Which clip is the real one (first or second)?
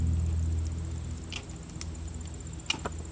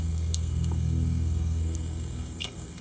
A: first